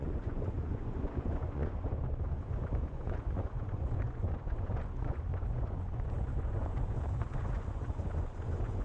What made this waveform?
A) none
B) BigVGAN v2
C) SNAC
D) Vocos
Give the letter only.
D